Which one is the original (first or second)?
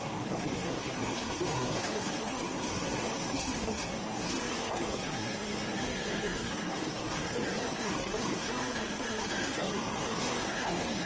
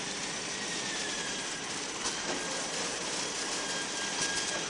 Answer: second